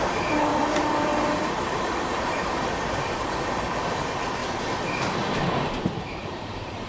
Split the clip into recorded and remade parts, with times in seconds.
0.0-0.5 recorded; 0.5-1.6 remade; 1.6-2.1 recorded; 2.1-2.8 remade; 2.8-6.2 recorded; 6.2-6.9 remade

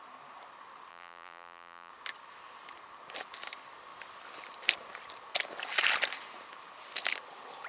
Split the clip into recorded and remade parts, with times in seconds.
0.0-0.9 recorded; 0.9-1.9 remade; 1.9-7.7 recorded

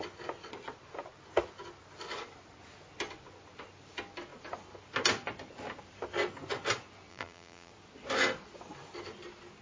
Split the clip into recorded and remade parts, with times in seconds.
0.0-7.1 recorded; 7.1-7.7 remade; 7.7-9.6 recorded